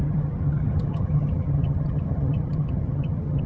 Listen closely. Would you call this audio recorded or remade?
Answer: remade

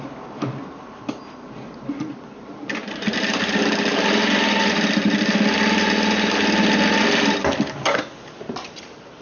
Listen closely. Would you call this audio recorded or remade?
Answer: recorded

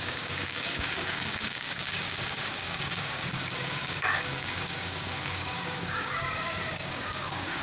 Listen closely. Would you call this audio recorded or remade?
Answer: remade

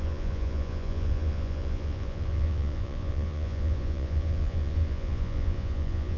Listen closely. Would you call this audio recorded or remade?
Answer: remade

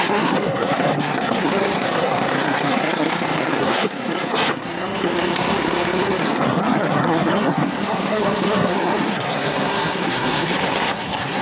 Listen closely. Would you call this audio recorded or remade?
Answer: remade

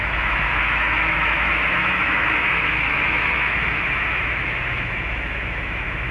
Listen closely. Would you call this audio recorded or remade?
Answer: remade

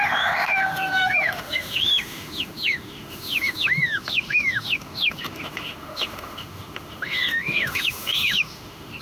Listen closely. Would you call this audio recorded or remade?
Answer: remade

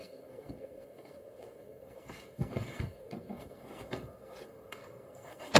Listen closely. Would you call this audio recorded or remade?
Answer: remade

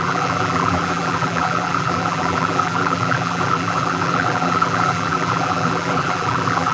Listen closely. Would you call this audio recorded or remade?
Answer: remade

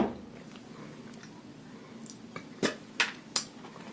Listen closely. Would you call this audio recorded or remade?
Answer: recorded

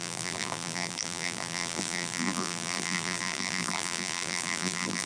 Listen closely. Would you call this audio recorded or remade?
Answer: remade